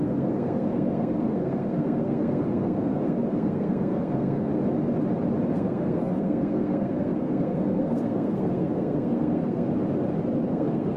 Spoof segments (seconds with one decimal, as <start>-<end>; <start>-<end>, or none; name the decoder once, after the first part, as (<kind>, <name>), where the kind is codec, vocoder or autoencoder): 0.0-4.5 (codec, SNAC); 5.5-9.7; 10.5-11.0